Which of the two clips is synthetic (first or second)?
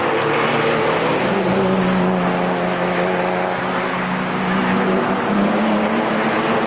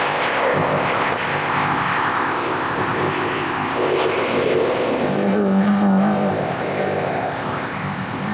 second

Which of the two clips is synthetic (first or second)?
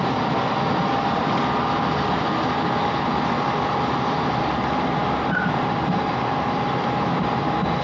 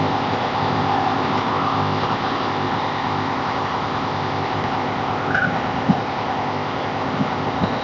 second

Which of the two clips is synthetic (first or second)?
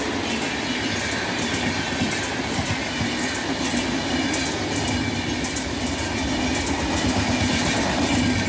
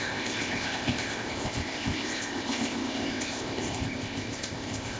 second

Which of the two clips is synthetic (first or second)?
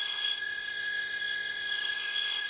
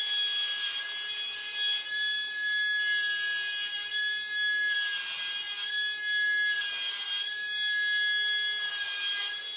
first